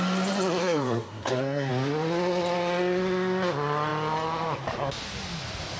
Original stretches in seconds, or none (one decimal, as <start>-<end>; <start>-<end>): 0.0-0.6; 1.7-5.8